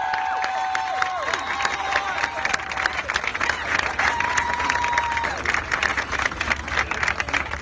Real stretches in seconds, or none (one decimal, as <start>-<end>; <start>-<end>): 0.0-3.3; 4.8-5.9; 6.5-7.6

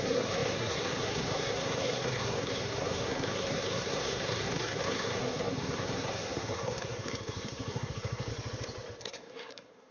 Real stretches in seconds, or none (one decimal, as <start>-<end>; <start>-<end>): 8.3-9.0

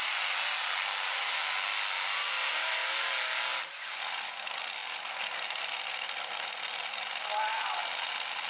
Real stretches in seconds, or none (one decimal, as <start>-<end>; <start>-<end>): 0.0-8.5

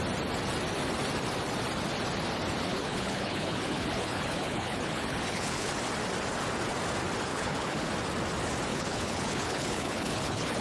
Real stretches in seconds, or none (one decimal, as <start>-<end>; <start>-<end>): 0.0-2.7; 5.7-7.3; 7.9-8.7

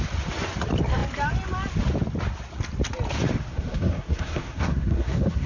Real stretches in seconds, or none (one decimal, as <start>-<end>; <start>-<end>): 0.0-3.5

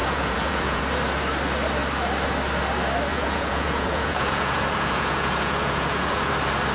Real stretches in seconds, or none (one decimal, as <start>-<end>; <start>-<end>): 0.8-3.1; 6.3-6.7

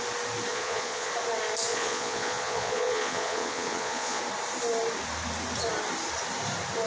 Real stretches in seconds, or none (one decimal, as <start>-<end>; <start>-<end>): 0.0-0.5; 1.1-1.7; 4.2-6.9

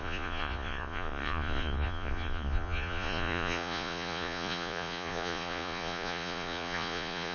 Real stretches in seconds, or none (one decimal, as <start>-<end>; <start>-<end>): none